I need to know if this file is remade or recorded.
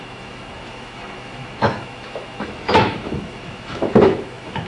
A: remade